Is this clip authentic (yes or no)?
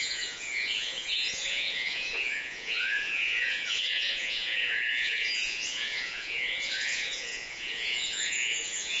no